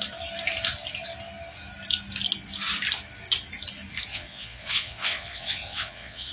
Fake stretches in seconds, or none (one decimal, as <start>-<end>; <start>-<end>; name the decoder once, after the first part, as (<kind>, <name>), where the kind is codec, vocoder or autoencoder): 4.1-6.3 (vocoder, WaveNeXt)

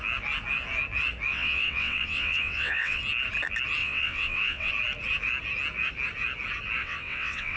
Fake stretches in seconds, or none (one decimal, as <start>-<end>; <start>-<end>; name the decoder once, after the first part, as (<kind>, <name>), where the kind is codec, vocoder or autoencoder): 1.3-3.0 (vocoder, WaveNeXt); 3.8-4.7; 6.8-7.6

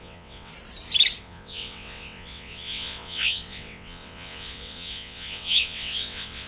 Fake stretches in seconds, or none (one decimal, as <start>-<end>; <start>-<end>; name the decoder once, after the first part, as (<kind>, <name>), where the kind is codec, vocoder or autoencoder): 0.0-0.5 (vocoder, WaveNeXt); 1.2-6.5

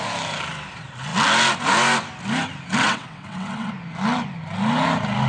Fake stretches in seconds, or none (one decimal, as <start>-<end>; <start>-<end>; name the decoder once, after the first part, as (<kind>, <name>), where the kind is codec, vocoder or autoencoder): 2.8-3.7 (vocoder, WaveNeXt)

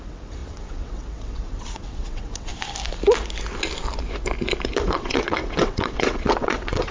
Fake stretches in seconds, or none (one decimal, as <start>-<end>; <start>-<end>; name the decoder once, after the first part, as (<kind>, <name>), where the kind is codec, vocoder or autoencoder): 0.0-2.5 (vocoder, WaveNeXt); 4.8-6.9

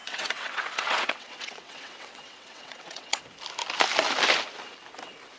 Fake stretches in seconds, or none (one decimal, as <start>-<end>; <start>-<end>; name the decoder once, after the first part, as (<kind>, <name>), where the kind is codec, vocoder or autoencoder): 0.0-3.2 (vocoder, WaveNeXt)